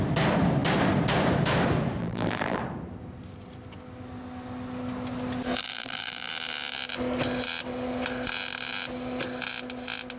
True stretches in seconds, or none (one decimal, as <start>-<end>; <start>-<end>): 0.0-2.0; 2.6-5.6; 6.3-10.2